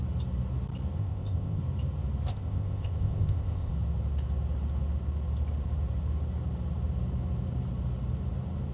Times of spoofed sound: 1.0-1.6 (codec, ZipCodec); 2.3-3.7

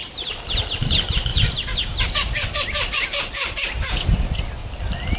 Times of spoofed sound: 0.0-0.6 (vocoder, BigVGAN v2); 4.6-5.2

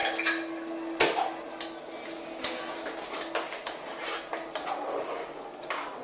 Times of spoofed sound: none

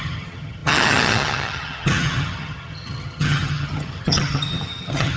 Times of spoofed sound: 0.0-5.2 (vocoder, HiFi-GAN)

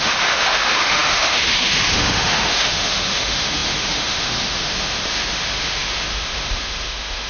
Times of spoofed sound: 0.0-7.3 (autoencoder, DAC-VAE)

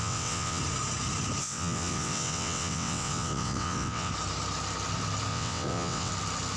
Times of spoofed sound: 0.0-0.6 (vocoder, WaveNeXt); 1.4-4.1; 5.3-6.1

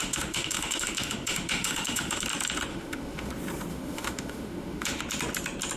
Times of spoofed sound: 0.0-2.2 (autoencoder, DAC-VAE); 2.7-3.3; 3.7-5.0

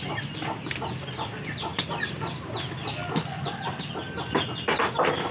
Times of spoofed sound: none